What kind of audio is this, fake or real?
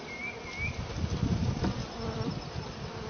real